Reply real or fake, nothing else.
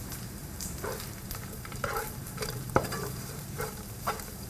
fake